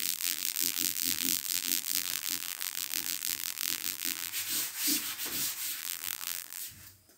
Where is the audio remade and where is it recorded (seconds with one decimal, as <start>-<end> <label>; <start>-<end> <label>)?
0.0-4.3 remade; 4.3-5.8 recorded; 5.8-6.6 remade; 6.6-7.2 recorded

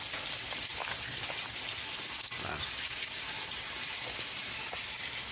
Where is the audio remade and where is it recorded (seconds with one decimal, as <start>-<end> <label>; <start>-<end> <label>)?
0.0-5.3 recorded

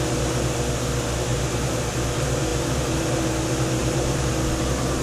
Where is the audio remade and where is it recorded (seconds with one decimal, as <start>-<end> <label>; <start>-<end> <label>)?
0.0-1.3 recorded; 1.3-1.9 remade; 1.9-2.5 recorded; 2.5-3.2 remade; 3.2-3.8 recorded; 3.8-4.3 remade; 4.3-5.0 recorded

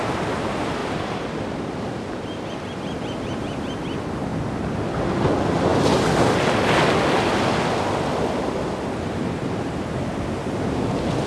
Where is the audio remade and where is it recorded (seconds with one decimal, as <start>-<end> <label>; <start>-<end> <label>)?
0.0-0.8 recorded; 0.8-1.3 remade; 1.3-4.3 recorded; 4.3-5.0 remade; 5.0-11.3 recorded

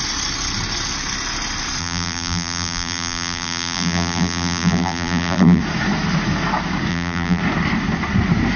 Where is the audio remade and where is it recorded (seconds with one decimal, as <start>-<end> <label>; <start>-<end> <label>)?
0.0-1.8 recorded; 1.8-5.6 remade; 5.6-6.9 recorded; 6.9-7.4 remade; 7.4-8.6 recorded